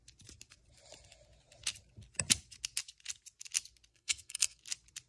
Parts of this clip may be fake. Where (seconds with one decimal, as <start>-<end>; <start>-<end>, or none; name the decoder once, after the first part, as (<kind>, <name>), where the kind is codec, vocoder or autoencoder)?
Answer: 3.9-4.6 (codec, SNAC)